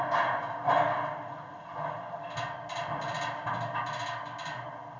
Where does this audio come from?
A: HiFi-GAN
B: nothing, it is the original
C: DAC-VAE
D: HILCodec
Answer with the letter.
B